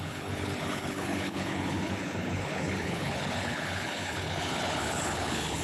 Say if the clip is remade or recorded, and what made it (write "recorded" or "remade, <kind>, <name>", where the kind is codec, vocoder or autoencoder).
remade, codec, HILCodec